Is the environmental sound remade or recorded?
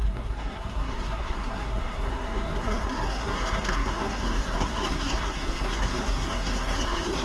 remade